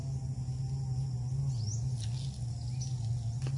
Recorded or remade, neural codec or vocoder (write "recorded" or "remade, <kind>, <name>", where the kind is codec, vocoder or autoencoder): recorded